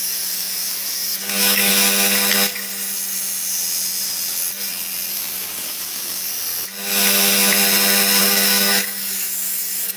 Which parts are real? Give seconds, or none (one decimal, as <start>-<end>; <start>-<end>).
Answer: 1.7-5.1; 6.3-8.2

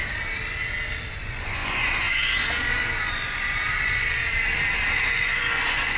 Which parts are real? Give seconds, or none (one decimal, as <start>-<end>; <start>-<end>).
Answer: 0.0-1.1; 4.2-4.9

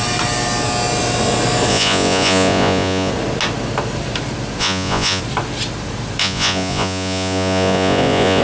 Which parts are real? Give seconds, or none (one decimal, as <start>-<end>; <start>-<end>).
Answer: 0.0-1.7; 3.1-4.6; 5.2-6.2

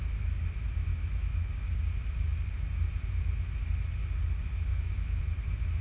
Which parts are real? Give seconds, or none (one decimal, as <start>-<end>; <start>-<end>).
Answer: 0.0-0.9; 1.5-4.7; 5.2-5.8